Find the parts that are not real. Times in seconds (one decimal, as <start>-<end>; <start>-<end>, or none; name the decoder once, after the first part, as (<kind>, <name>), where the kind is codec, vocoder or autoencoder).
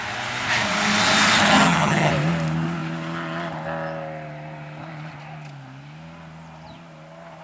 1.5-2.1 (vocoder, HiFi-GAN)